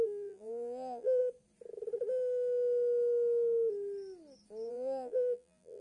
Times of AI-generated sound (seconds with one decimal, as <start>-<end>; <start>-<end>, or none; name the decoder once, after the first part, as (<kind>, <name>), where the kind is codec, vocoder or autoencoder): 0.0-1.2 (vocoder, BigVGAN v2); 4.7-5.8